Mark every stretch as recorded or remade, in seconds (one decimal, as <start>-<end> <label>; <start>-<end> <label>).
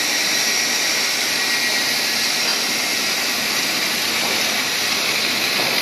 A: 0.0-2.5 remade; 2.5-3.0 recorded; 3.0-5.8 remade